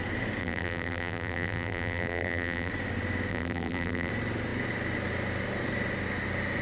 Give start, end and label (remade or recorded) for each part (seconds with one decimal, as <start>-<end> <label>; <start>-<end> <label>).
0.0-0.4 recorded; 0.4-2.7 remade; 2.7-3.3 recorded; 3.3-4.1 remade; 4.1-6.6 recorded